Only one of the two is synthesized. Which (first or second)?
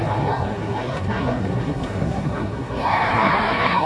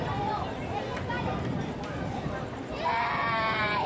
first